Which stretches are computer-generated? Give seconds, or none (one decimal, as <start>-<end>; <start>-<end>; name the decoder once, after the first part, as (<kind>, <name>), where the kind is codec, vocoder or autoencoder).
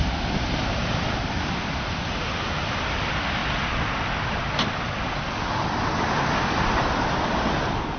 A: none